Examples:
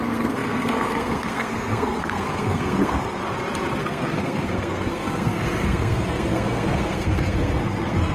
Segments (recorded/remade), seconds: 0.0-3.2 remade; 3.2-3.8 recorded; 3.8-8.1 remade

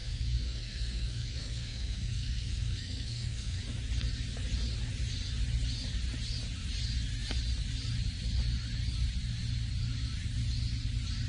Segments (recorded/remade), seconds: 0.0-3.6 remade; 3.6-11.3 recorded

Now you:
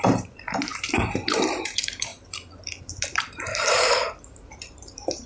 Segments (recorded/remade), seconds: 0.0-0.7 remade; 0.7-1.5 recorded; 1.5-2.1 remade; 2.1-2.8 recorded; 2.8-5.3 remade

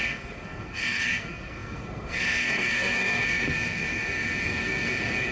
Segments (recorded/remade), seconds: 0.0-5.3 remade

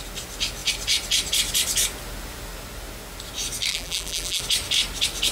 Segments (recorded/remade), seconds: 0.0-3.7 recorded; 3.7-4.4 remade; 4.4-5.3 recorded

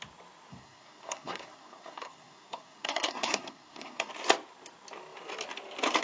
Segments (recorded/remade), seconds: 0.0-0.5 recorded; 0.5-4.1 remade; 4.1-6.0 recorded

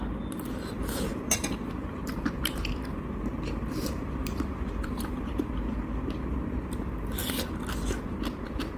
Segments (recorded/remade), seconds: 0.0-1.1 recorded; 1.1-5.5 remade; 5.5-8.8 recorded

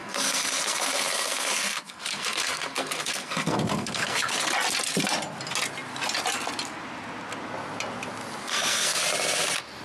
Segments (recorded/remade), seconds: 0.0-4.5 remade; 4.5-8.4 recorded; 8.4-9.0 remade; 9.0-9.8 recorded